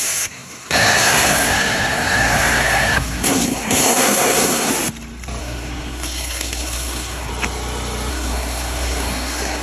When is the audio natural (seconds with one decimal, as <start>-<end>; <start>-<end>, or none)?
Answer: 4.7-5.4; 7.3-8.1